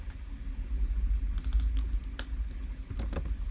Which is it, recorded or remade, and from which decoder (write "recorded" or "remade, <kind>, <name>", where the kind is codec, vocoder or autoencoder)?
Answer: recorded